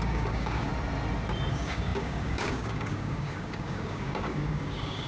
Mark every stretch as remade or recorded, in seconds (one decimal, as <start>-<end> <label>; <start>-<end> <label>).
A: 0.0-0.7 remade; 0.7-1.5 recorded; 1.5-5.1 remade